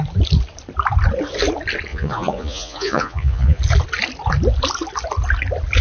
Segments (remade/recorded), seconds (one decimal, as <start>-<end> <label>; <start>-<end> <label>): 0.0-1.9 recorded; 1.9-3.6 remade; 3.6-5.8 recorded